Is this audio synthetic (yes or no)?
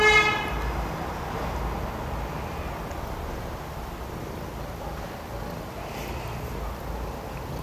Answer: no